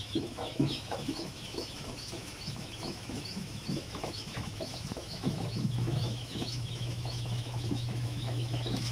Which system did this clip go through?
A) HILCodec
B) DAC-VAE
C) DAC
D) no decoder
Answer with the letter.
B